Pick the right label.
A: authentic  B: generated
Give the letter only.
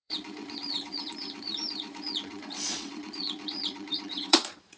B